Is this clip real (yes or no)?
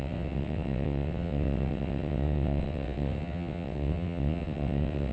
no